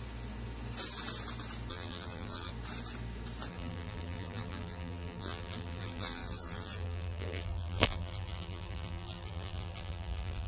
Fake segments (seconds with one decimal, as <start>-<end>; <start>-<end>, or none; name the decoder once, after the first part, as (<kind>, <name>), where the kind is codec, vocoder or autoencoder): 1.7-2.5 (vocoder, BigVGAN v2); 3.5-10.5